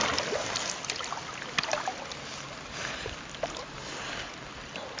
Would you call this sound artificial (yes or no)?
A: no